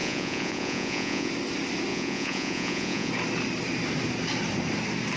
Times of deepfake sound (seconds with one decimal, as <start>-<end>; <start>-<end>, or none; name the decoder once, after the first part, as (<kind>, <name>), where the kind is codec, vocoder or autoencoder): 0.0-1.3 (vocoder, Vocos); 1.9-3.1